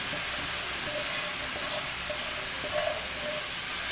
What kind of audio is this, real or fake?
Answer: real